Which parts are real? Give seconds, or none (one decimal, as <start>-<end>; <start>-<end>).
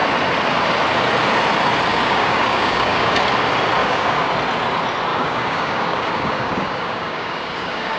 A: 0.0-1.9; 3.2-3.8; 4.3-5.1